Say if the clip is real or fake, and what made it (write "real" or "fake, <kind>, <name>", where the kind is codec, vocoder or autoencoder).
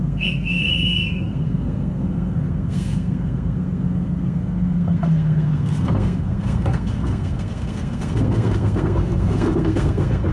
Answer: fake, codec, SNAC